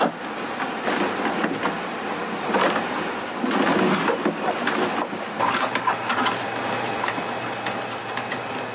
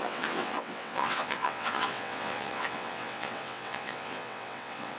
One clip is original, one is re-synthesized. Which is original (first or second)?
first